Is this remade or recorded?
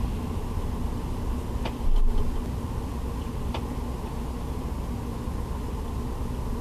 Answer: recorded